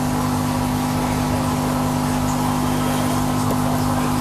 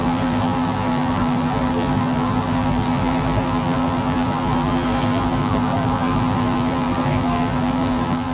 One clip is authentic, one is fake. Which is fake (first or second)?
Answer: second